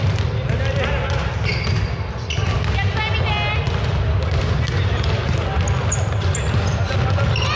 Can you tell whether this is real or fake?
real